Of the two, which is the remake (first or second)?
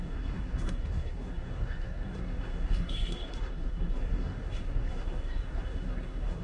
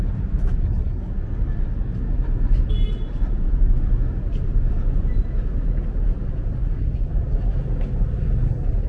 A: first